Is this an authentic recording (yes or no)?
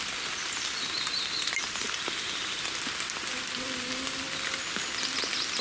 yes